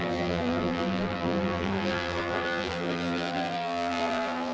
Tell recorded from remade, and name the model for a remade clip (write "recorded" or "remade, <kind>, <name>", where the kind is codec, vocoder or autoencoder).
remade, vocoder, BigVGAN v2